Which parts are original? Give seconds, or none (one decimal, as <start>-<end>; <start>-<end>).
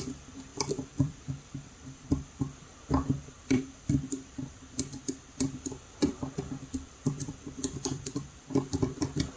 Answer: none